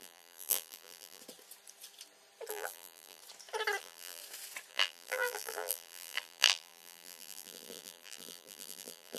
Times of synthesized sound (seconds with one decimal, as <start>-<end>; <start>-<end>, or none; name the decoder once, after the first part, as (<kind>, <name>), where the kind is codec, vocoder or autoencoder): 0.0-1.2 (vocoder, BigVGAN v2); 2.5-3.2; 3.8-4.2; 4.7-9.2